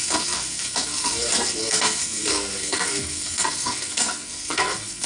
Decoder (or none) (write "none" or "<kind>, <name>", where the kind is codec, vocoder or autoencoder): codec, SNAC